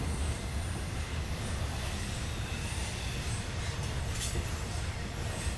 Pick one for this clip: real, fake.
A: real